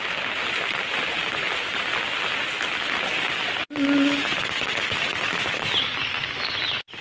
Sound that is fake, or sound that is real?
real